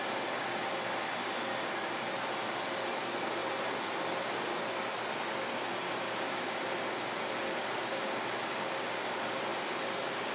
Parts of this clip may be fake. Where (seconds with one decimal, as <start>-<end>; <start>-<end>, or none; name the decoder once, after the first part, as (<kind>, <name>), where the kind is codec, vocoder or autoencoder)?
9.5-10.3 (vocoder, BigVGAN v2)